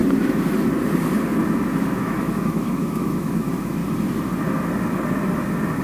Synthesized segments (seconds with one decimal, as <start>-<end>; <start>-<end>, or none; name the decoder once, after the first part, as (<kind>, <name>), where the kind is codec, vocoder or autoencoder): 1.8-3.8 (autoencoder, DAC-VAE)